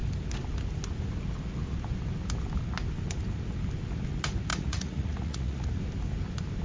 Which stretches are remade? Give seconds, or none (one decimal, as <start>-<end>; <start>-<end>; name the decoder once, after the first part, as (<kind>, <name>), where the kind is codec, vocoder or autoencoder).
4.5-5.7 (vocoder, Vocos)